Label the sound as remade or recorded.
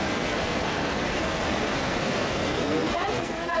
remade